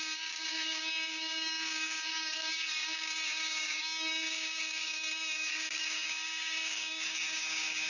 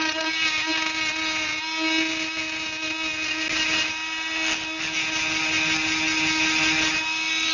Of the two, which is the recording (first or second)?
second